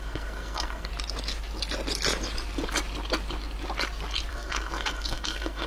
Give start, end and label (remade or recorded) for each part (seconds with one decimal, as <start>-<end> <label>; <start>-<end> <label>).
0.0-0.9 remade; 0.9-4.3 recorded; 4.3-5.7 remade